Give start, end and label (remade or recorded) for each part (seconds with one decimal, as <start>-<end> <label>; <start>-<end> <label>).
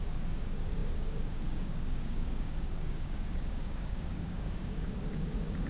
0.0-5.7 remade